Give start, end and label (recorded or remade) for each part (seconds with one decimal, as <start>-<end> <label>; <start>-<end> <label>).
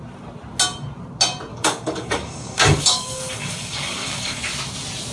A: 0.0-1.5 recorded; 1.5-4.4 remade; 4.4-5.1 recorded